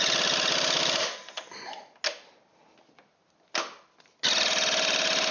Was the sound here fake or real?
real